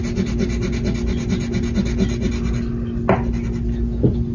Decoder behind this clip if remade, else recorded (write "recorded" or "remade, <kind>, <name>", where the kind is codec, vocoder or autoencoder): recorded